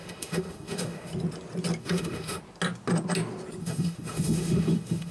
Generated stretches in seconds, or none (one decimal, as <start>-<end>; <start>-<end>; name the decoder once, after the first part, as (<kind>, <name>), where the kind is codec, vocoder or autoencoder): 0.0-1.1 (autoencoder, DAC-VAE); 1.8-2.4; 3.6-5.1